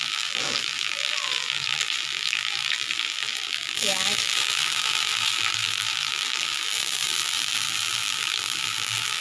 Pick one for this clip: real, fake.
fake